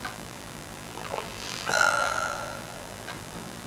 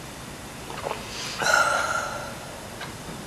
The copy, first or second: first